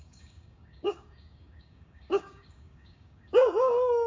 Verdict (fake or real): fake